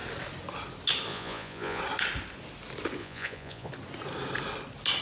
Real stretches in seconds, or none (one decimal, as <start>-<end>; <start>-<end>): 0.0-1.1; 1.8-3.0; 3.7-5.0